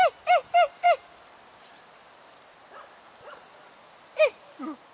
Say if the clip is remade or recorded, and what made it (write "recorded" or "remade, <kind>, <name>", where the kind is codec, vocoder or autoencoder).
recorded